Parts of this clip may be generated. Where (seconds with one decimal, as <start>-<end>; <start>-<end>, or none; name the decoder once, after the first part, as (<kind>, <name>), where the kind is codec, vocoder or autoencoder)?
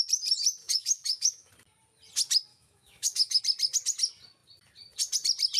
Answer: 0.6-1.5 (autoencoder, DAC-VAE); 2.5-3.4